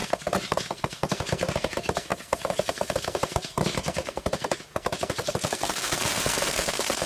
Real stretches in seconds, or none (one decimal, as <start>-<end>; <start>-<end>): none